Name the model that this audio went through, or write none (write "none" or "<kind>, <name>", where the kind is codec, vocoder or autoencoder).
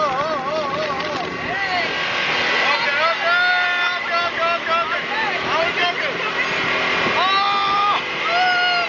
none